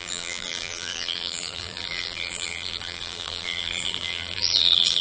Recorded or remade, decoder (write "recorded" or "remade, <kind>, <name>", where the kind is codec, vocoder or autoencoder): remade, vocoder, BigVGAN v2